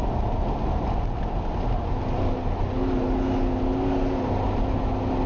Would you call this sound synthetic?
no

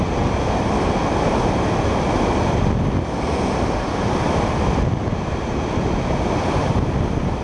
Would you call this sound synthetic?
no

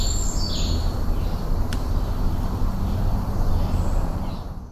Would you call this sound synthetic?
no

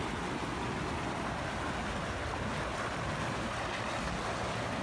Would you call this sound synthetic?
no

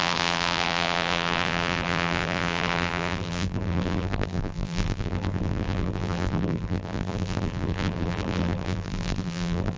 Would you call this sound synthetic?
yes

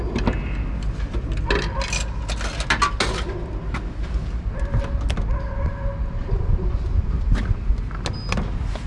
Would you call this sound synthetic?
no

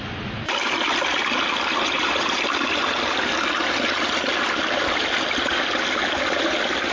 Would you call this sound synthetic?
no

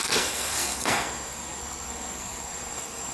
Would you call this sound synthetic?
yes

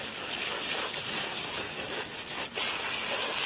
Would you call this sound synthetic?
no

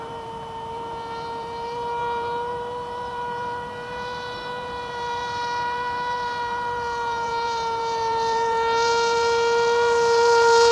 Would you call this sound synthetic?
yes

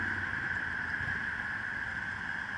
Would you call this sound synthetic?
no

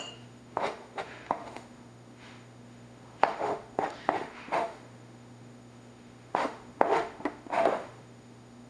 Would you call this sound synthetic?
yes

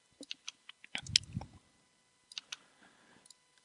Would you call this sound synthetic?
no